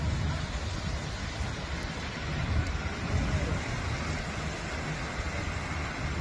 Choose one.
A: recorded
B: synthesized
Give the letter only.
A